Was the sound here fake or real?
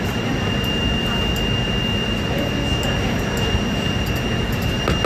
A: real